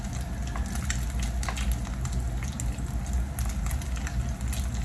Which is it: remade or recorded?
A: recorded